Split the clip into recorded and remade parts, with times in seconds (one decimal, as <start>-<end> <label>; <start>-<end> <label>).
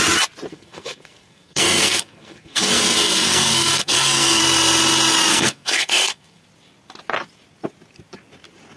0.0-0.5 recorded; 0.5-4.4 remade; 4.4-5.3 recorded; 5.3-6.4 remade; 6.4-8.8 recorded